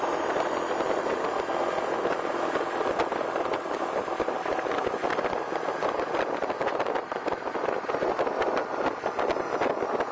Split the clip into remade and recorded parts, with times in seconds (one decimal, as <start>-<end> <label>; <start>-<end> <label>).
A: 0.0-10.1 recorded